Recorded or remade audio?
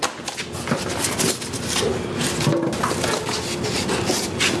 recorded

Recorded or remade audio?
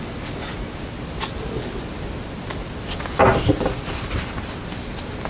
recorded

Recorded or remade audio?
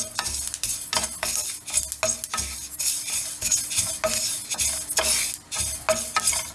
recorded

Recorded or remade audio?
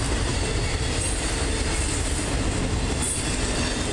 recorded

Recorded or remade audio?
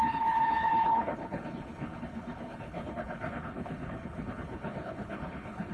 remade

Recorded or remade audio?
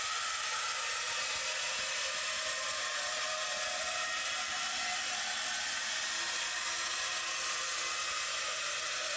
recorded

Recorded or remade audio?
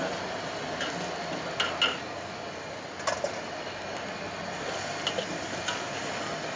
recorded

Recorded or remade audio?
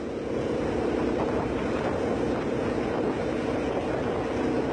recorded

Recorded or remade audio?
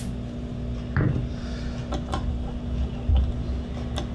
recorded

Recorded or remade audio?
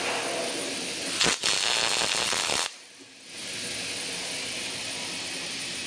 recorded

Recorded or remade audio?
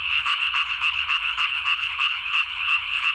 remade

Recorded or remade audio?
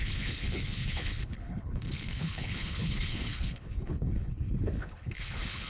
remade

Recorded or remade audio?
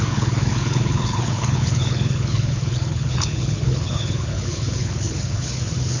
remade